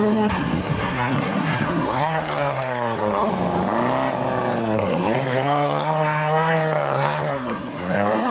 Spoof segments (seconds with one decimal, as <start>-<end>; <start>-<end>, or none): 0.0-3.3; 4.6-8.3